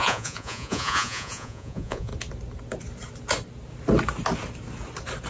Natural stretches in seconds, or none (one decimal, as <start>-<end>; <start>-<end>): 2.1-5.3